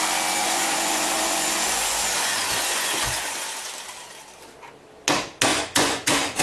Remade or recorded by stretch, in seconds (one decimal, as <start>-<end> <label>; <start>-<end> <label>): 0.0-0.4 recorded; 0.4-3.7 remade; 3.7-5.5 recorded; 5.5-6.4 remade